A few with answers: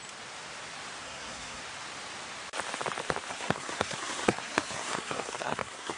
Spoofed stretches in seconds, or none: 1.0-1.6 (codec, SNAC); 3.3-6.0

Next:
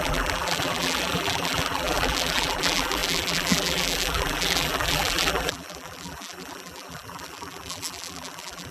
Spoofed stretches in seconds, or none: 0.0-8.7 (vocoder, BigVGAN v2)

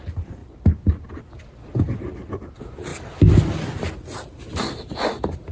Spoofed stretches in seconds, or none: none

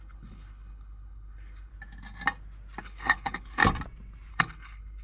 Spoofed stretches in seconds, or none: 0.0-1.7 (codec, HILCodec); 2.8-3.6; 4.3-5.0

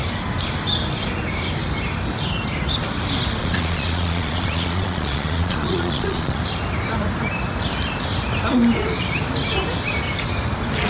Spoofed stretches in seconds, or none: 3.4-6.4 (vocoder, Vocos)

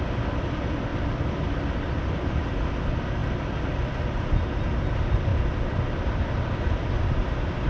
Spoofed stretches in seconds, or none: none